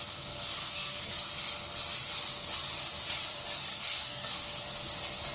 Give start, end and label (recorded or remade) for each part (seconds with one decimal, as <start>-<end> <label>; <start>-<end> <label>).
0.0-0.6 recorded; 0.6-1.2 remade; 1.2-3.7 recorded; 3.7-4.6 remade; 4.6-5.3 recorded